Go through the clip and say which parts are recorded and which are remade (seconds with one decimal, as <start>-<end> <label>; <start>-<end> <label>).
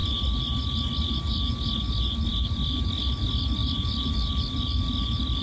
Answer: 0.0-5.4 recorded